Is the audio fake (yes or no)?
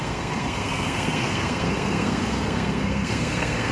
yes